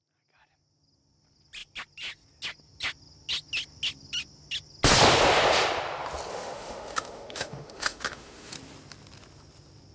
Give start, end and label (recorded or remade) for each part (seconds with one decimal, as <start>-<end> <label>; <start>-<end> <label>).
0.0-6.3 recorded; 6.3-8.5 remade; 8.5-9.9 recorded